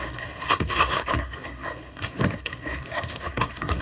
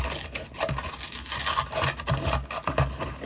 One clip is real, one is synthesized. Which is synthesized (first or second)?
first